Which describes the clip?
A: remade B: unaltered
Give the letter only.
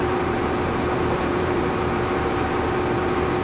A